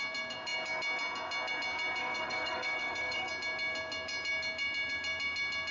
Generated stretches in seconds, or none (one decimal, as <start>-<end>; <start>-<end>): 2.0-3.3